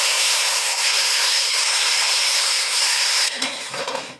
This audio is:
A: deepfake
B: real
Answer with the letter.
A